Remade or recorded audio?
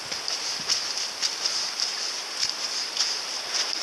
recorded